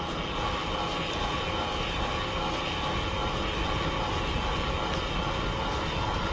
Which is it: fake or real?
real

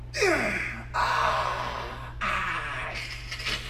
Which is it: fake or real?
real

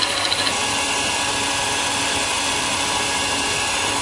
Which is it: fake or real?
real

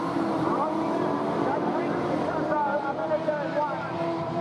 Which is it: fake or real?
fake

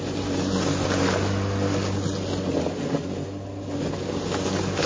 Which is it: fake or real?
real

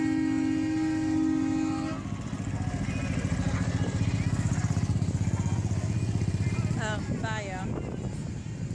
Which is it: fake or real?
real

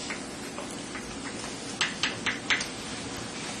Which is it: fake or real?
real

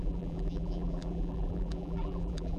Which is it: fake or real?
fake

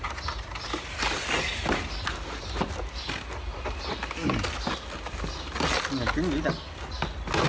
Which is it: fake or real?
real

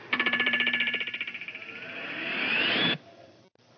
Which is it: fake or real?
fake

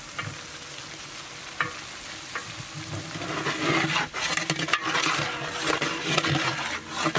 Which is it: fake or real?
real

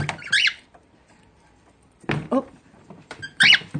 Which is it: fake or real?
fake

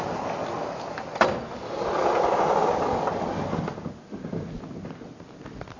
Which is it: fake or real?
real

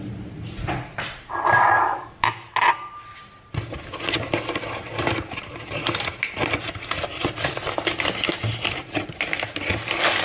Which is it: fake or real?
real